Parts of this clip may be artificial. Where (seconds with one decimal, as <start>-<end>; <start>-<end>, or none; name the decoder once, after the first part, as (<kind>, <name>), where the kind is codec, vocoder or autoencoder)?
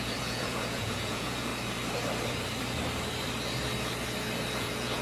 0.0-1.5 (vocoder, Vocos); 4.5-5.0